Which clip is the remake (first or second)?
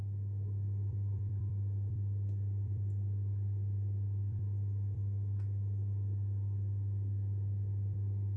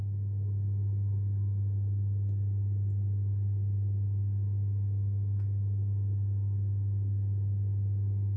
first